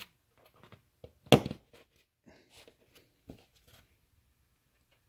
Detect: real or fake real